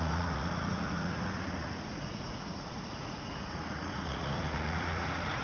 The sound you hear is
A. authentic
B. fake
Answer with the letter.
B